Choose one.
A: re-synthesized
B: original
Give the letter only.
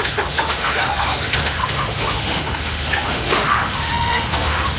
A